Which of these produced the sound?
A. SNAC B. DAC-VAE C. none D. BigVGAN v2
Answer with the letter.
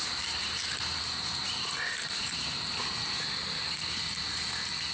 C